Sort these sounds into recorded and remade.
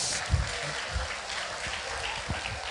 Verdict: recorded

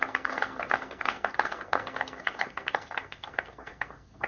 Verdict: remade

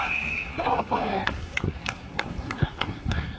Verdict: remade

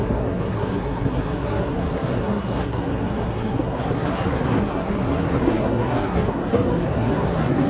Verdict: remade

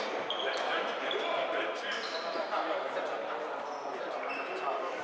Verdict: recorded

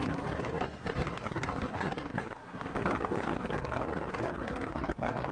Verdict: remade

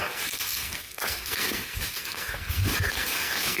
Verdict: remade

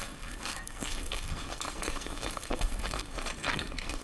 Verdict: remade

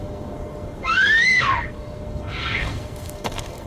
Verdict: remade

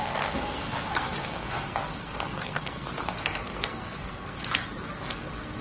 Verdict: remade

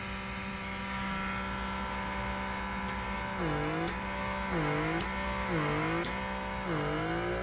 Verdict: recorded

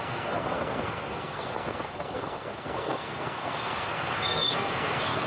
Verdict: remade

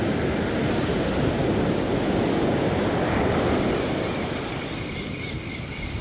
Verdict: recorded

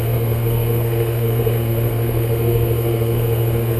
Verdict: remade